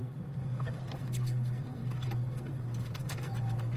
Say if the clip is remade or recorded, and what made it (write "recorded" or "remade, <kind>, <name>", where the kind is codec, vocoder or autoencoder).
remade, codec, SNAC